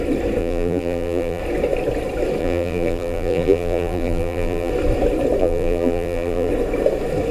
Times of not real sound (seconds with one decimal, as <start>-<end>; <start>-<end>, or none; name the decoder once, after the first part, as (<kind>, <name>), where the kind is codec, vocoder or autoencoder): 0.4-1.4 (vocoder, BigVGAN v2); 2.4-4.7; 5.4-6.5